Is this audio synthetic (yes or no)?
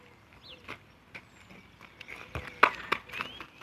no